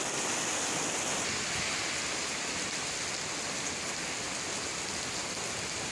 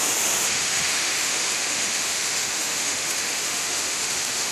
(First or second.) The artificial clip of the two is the second